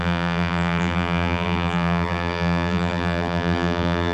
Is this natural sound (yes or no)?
no